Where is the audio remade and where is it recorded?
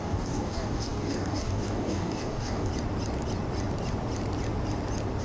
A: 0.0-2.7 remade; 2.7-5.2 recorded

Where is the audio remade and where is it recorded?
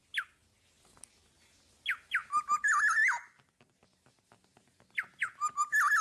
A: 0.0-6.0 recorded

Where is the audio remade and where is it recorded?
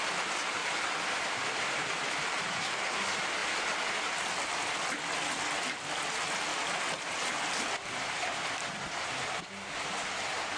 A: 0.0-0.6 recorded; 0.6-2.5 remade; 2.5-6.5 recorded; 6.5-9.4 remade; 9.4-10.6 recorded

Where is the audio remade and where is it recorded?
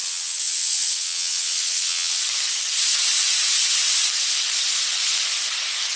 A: 0.0-2.2 remade; 2.2-6.0 recorded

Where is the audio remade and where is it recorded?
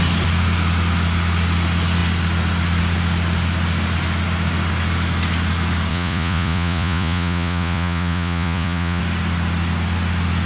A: 0.0-5.9 recorded; 5.9-9.0 remade; 9.0-10.5 recorded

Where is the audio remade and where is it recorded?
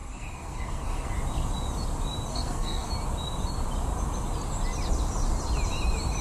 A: 0.0-1.1 remade; 1.1-2.3 recorded; 2.3-2.9 remade; 2.9-6.2 recorded